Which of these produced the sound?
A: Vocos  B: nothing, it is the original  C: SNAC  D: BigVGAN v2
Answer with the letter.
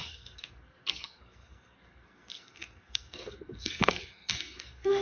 C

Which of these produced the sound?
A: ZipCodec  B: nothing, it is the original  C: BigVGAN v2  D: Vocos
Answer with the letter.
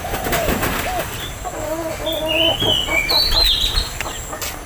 B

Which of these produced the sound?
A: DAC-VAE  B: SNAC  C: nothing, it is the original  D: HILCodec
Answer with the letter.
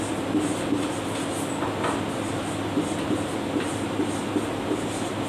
C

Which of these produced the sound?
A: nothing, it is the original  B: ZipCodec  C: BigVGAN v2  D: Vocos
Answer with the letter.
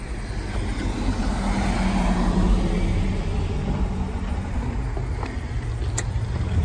A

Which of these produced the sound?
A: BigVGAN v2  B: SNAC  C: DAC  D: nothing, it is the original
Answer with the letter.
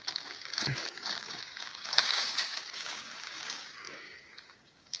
C